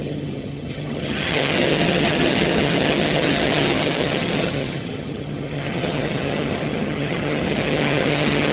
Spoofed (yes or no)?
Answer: yes